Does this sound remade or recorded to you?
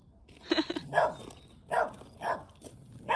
recorded